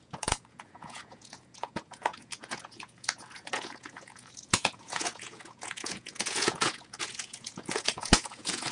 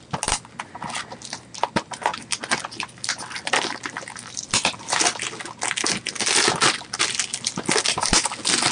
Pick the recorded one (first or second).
second